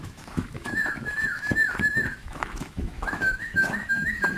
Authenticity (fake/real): fake